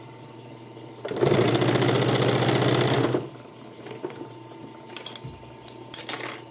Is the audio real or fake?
real